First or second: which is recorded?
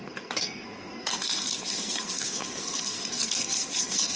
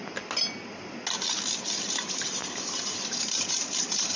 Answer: second